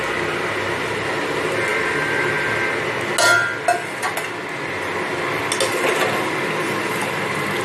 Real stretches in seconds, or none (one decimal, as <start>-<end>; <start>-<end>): 0.0-7.6